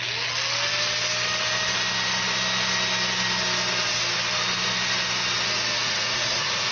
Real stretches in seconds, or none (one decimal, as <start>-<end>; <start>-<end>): 0.0-5.8